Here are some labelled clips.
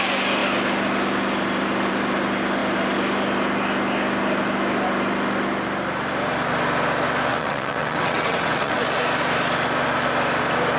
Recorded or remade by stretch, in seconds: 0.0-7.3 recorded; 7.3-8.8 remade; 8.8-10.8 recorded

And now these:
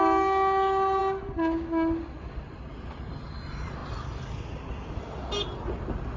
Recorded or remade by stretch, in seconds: 0.0-6.2 recorded

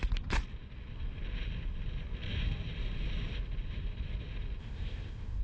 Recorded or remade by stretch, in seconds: 0.0-4.6 recorded; 4.6-5.4 remade

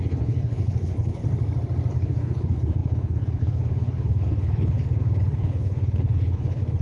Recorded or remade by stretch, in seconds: 0.0-1.2 remade; 1.2-1.9 recorded; 1.9-6.8 remade

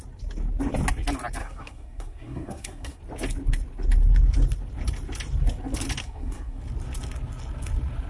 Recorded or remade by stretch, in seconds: 0.0-1.4 recorded; 1.4-3.0 remade; 3.0-6.0 recorded; 6.0-6.6 remade; 6.6-8.1 recorded

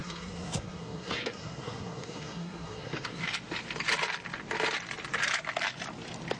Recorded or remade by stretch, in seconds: 0.0-3.2 remade; 3.2-6.4 recorded

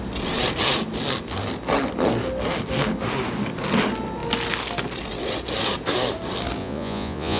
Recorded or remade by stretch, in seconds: 0.0-6.6 recorded; 6.6-7.4 remade